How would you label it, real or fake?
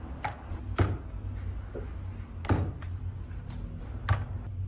real